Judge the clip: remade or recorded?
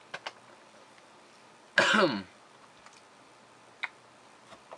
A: recorded